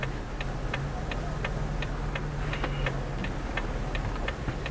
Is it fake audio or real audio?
real